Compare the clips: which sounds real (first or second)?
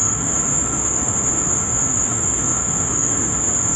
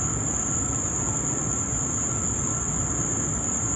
second